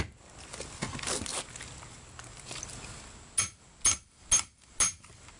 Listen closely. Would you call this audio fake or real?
real